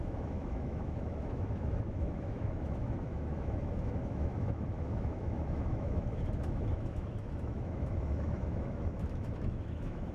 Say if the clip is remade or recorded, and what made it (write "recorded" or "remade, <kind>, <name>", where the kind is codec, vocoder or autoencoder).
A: remade, autoencoder, DAC-VAE